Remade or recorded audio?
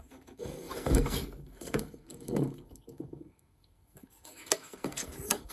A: remade